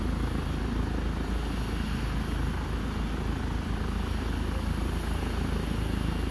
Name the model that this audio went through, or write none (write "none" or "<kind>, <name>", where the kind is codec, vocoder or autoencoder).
none